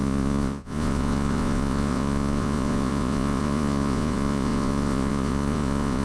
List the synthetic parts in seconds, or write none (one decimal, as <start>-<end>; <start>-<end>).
0.0-6.0